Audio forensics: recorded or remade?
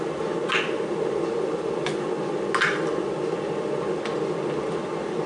recorded